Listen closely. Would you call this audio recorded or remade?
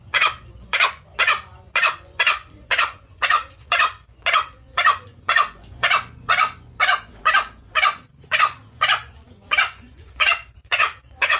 remade